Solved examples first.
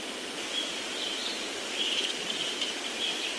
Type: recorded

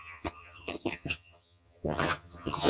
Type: remade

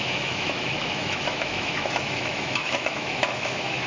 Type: remade